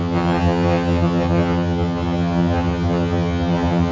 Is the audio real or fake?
fake